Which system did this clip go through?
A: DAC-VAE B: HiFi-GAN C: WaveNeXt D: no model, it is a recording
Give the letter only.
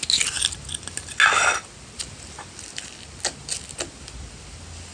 D